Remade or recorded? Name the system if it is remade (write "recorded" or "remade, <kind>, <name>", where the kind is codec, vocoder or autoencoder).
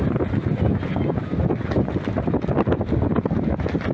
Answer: recorded